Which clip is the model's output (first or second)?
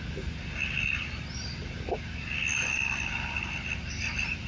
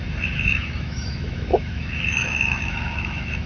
second